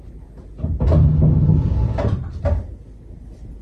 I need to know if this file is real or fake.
real